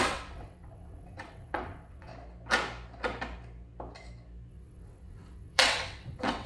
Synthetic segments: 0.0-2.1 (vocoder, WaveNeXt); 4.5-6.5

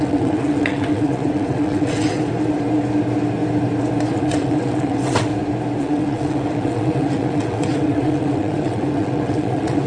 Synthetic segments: 0.0-2.2 (vocoder, WaveNeXt); 4.1-5.3; 5.8-9.9

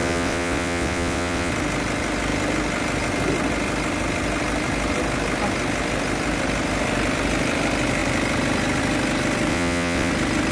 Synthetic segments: 0.0-1.5 (vocoder, WaveNeXt); 9.5-10.1

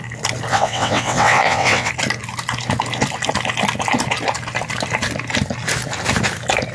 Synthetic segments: 0.5-1.9 (vocoder, WaveNeXt)